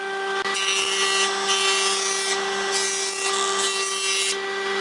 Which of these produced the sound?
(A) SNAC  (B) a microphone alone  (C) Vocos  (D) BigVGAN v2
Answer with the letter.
B